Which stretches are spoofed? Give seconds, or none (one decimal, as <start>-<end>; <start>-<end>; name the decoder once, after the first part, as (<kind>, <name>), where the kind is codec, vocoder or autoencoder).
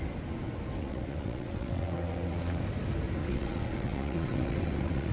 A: 0.8-2.6 (vocoder, WaveNeXt); 3.2-5.1